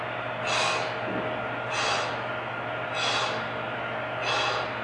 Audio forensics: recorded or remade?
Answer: recorded